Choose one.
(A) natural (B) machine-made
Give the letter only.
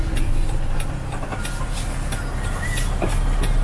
A